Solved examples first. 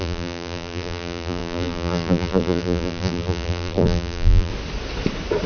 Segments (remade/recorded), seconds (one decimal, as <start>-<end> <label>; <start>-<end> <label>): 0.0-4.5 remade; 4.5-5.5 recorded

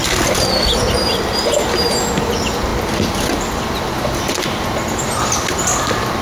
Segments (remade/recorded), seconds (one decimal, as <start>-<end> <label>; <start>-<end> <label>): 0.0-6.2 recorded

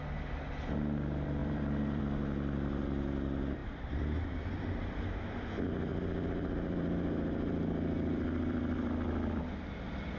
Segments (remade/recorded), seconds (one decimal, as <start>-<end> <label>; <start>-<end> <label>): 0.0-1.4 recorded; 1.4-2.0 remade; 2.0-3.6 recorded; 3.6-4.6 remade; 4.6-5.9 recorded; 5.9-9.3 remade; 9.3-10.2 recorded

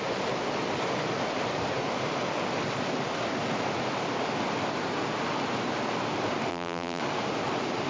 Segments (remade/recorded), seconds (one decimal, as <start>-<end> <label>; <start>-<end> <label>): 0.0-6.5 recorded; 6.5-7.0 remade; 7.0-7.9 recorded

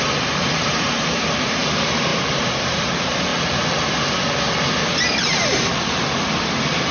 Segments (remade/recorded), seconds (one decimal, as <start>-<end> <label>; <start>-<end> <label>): 0.0-3.3 remade; 3.3-5.0 recorded; 5.0-5.7 remade; 5.7-6.9 recorded